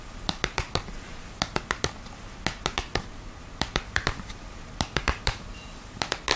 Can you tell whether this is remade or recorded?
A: recorded